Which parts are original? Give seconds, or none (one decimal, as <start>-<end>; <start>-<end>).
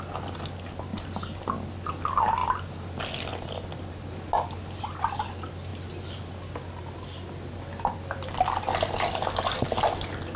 0.0-10.4